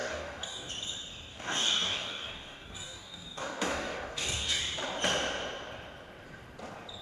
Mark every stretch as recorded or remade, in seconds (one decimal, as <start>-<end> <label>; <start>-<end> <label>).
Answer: 0.0-0.7 remade; 0.7-1.3 recorded; 1.3-4.6 remade; 4.6-7.0 recorded